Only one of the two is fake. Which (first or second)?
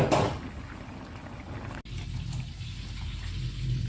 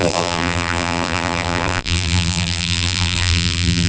second